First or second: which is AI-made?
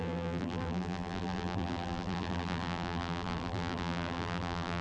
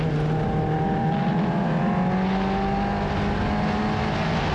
first